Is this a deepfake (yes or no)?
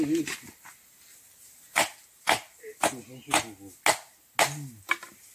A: no